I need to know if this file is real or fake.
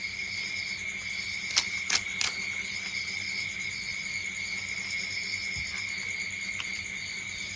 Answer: real